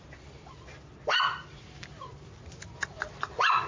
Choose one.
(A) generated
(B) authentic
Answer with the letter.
B